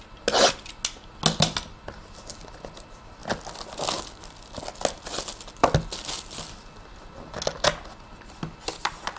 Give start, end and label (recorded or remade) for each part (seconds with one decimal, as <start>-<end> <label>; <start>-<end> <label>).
0.0-9.2 recorded